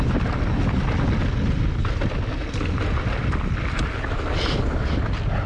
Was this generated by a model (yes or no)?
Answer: no